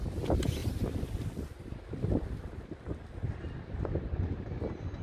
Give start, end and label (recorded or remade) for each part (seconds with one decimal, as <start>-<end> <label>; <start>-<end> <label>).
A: 0.0-5.0 recorded

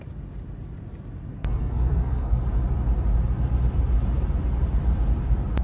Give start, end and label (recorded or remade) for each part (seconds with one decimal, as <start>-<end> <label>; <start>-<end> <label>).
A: 0.0-1.3 recorded; 1.3-2.4 remade; 2.4-5.6 recorded

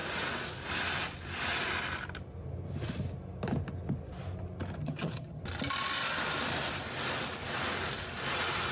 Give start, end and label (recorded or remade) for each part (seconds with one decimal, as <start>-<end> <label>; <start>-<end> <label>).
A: 0.0-4.8 recorded; 4.8-5.4 remade; 5.4-8.7 recorded

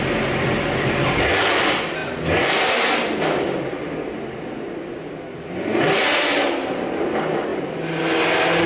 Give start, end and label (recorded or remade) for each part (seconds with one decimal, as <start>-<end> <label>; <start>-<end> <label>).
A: 0.0-8.7 recorded

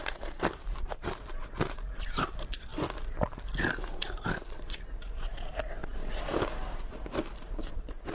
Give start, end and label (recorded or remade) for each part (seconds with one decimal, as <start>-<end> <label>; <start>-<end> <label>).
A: 0.0-2.7 remade; 2.7-3.6 recorded; 3.6-5.8 remade; 5.8-7.4 recorded; 7.4-8.1 remade

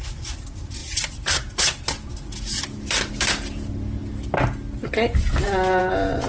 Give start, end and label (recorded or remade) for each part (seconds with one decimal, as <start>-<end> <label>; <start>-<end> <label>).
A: 0.0-6.3 recorded